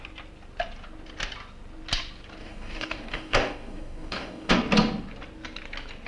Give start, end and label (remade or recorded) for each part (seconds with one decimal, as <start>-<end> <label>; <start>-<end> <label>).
0.0-2.4 recorded; 2.4-4.5 remade; 4.5-6.1 recorded

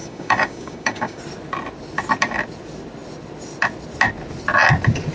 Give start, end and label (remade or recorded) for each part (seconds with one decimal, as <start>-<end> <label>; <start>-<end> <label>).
0.0-1.2 remade; 1.2-5.1 recorded

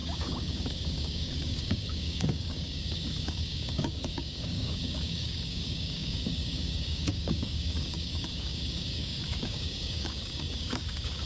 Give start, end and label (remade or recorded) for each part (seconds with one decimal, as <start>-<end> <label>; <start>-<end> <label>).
0.0-11.3 remade

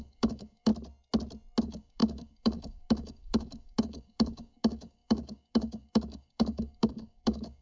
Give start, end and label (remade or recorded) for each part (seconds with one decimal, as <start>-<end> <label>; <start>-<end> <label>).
0.0-0.7 remade; 0.7-1.6 recorded; 1.6-7.6 remade

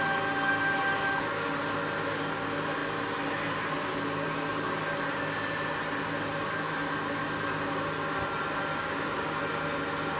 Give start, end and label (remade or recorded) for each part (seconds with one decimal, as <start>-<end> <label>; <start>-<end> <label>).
0.0-8.8 recorded; 8.8-9.4 remade; 9.4-10.2 recorded

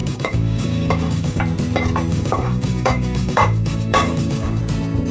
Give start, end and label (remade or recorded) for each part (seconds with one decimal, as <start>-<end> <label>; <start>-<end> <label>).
0.0-1.4 remade; 1.4-2.1 recorded; 2.1-4.6 remade; 4.6-5.1 recorded